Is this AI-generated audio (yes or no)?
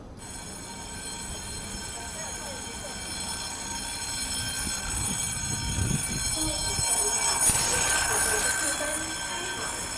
no